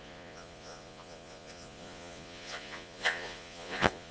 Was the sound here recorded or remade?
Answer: remade